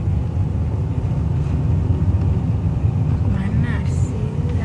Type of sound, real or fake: real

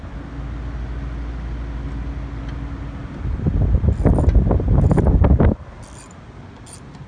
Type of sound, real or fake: real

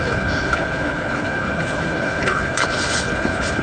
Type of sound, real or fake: fake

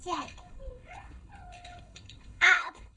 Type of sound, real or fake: fake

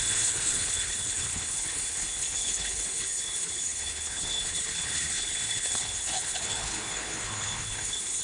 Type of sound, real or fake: fake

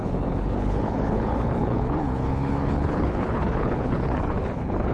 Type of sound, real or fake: fake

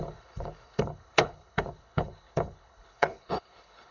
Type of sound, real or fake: fake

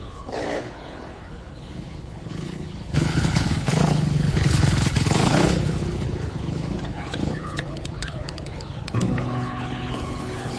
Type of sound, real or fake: fake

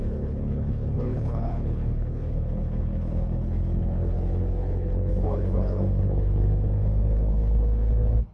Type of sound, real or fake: fake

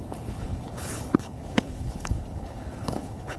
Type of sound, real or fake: fake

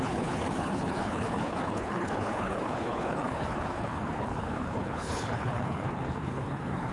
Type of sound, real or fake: fake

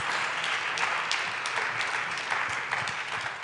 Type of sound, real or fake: real